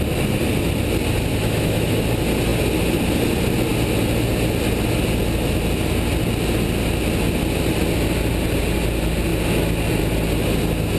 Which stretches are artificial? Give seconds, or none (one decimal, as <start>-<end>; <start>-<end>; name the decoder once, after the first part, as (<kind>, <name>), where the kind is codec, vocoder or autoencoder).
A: 1.3-2.0 (autoencoder, DAC-VAE)